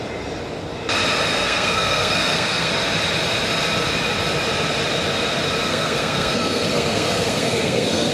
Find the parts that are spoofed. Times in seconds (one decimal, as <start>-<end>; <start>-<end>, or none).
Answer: 1.3-2.7; 5.7-8.1